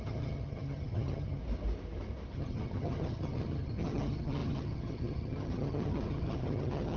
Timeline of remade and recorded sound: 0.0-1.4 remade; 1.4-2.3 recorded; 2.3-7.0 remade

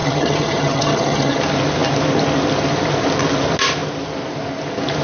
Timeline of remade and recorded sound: 0.0-1.4 remade; 1.4-5.0 recorded